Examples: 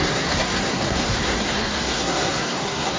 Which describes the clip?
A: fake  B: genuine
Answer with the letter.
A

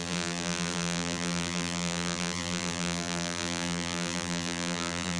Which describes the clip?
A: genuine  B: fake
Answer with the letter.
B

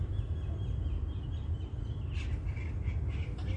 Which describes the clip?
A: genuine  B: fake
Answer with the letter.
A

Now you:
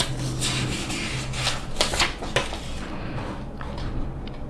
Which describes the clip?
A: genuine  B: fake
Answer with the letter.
A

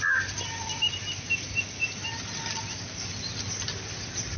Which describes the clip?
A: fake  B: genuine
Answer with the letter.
B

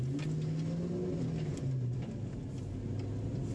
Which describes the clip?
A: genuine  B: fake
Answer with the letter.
A